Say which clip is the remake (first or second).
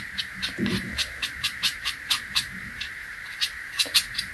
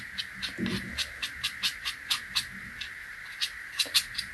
first